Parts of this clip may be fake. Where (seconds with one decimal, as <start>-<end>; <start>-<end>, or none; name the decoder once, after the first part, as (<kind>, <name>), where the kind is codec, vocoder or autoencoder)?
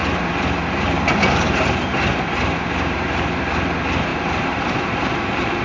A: 0.0-3.4 (vocoder, BigVGAN v2); 4.1-5.6